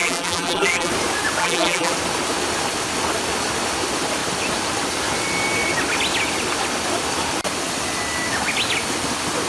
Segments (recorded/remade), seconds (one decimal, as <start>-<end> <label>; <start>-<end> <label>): 0.0-0.9 remade; 0.9-1.4 recorded; 1.4-1.9 remade; 1.9-9.5 recorded

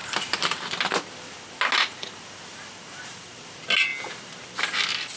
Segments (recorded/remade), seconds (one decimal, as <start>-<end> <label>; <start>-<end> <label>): 0.0-5.2 recorded

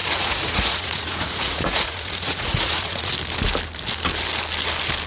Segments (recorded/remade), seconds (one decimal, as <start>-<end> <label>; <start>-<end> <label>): 0.0-3.1 remade; 3.1-5.1 recorded

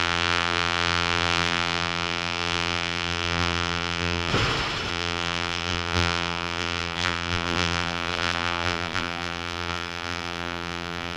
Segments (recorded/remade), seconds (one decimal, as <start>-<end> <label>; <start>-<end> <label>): 0.0-4.3 remade; 4.3-4.9 recorded; 4.9-11.2 remade